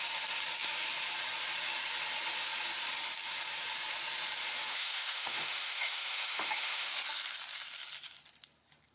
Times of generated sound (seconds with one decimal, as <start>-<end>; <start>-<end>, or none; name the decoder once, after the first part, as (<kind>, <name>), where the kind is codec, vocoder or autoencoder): 4.7-6.9 (autoencoder, DAC-VAE)

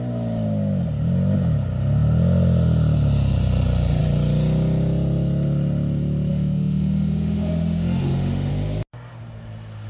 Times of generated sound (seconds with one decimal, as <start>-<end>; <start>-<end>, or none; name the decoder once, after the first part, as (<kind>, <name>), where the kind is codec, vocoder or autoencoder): 6.3-8.5 (autoencoder, DAC-VAE)

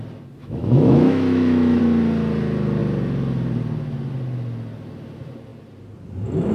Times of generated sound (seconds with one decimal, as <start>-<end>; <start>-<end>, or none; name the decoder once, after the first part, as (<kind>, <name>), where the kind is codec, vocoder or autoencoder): 0.4-1.8 (autoencoder, DAC-VAE)

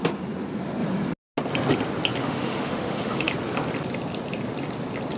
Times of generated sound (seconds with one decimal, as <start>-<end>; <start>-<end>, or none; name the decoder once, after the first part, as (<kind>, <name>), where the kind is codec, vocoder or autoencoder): 2.2-3.3 (autoencoder, DAC-VAE)

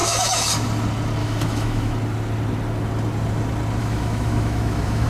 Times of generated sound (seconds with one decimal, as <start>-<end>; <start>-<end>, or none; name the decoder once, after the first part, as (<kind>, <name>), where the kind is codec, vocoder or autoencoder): 0.0-0.5 (autoencoder, DAC-VAE); 1.2-1.9; 3.8-5.1

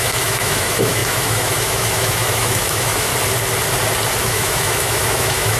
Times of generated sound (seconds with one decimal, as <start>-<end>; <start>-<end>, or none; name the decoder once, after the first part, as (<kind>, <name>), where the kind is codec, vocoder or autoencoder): 0.0-3.1 (autoencoder, DAC-VAE); 4.2-5.6